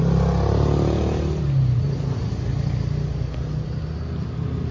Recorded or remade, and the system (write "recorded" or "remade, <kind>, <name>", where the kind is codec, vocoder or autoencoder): recorded